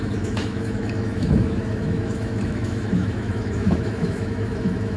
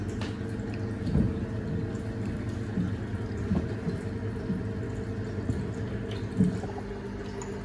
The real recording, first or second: second